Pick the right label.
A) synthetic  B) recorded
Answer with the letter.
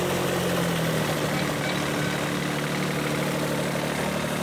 B